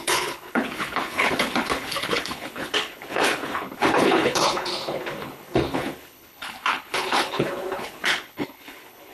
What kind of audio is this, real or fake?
fake